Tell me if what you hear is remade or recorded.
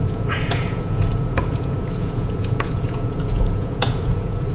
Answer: remade